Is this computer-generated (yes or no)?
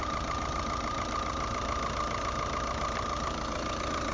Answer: no